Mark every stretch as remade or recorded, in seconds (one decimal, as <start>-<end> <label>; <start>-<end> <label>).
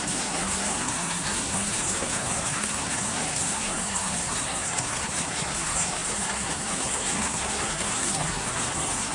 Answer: 0.0-9.1 remade